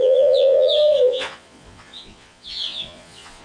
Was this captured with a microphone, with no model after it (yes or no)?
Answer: no